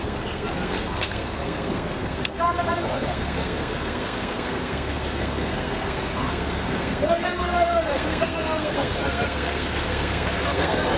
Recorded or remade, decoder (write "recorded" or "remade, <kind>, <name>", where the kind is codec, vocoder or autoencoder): remade, codec, SNAC